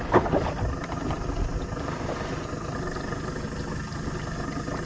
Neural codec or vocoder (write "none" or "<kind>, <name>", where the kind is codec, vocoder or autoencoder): none